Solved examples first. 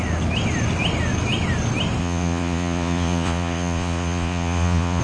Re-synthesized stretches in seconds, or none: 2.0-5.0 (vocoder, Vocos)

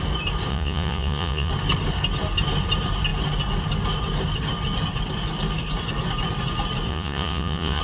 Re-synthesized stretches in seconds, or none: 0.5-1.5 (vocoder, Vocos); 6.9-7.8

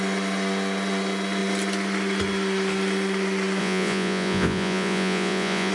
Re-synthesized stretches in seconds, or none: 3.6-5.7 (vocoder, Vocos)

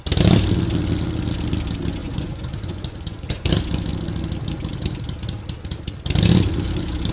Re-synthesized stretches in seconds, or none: 2.0-3.5 (vocoder, Vocos)

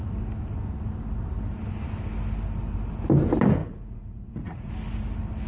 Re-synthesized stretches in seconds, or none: 3.6-4.7 (vocoder, Vocos)